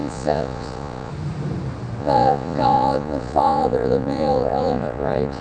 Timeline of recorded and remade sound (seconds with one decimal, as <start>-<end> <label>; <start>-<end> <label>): 0.0-1.1 remade; 1.1-2.0 recorded; 2.0-5.4 remade